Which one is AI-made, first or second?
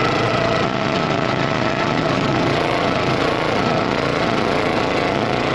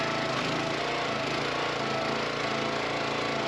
first